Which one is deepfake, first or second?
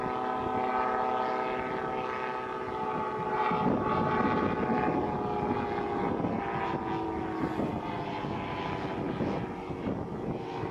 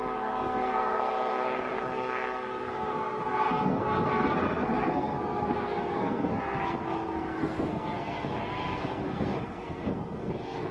second